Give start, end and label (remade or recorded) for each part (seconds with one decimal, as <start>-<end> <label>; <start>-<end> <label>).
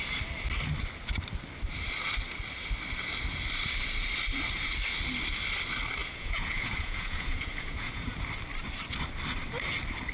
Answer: 0.0-6.0 recorded; 6.0-8.2 remade; 8.2-10.1 recorded